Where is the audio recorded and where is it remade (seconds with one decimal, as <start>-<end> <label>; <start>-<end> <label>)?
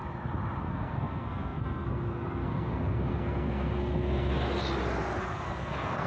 0.0-0.6 recorded; 0.6-4.3 remade; 4.3-5.2 recorded; 5.2-6.1 remade